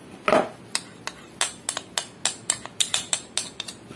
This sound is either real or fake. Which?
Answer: real